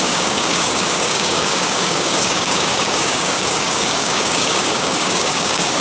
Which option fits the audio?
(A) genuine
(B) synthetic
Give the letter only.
B